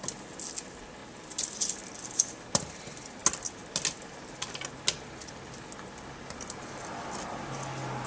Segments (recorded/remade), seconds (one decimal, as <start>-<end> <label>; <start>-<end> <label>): 0.0-8.1 recorded